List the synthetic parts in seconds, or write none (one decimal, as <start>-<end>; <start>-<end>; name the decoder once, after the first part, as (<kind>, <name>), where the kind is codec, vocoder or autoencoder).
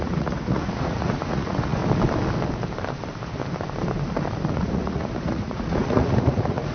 0.0-1.8 (vocoder, Vocos); 4.5-6.7